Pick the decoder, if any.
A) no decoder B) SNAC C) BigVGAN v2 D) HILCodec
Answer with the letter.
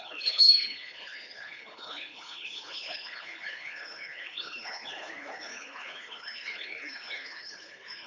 D